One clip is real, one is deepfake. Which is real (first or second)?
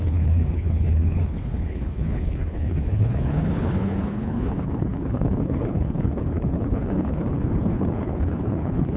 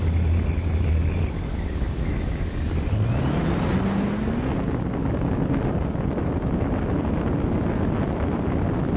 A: second